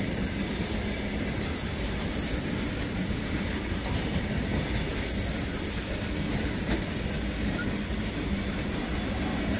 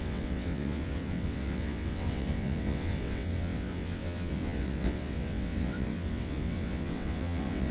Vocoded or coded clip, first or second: second